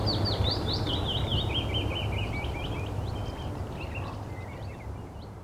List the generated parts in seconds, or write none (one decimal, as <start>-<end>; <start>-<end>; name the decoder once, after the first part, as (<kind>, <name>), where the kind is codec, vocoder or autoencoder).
none